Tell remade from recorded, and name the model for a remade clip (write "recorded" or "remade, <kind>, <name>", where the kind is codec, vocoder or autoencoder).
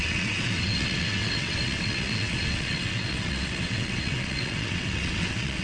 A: remade, vocoder, WaveNeXt